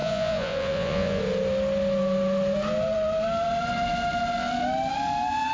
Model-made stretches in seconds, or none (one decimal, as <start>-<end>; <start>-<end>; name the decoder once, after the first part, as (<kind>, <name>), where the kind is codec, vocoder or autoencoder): 0.0-1.2 (vocoder, Vocos)